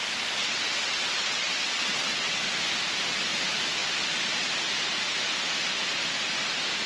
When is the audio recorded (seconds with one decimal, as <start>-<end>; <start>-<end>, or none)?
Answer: 0.0-0.4; 2.4-6.9